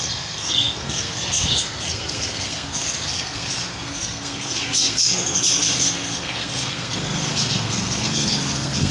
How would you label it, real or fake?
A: fake